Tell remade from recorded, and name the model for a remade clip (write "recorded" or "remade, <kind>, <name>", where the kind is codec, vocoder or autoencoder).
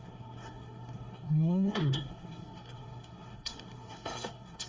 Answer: remade, codec, SNAC